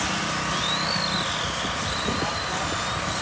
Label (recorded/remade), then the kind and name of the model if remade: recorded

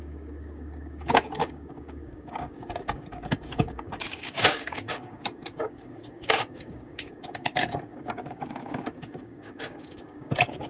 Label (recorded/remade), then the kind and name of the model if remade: remade, codec, DAC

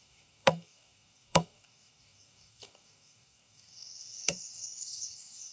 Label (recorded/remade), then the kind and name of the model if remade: remade, codec, DAC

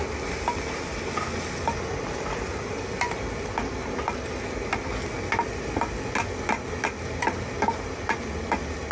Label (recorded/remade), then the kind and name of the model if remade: recorded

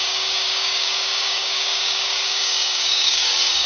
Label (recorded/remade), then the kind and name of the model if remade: remade, codec, DAC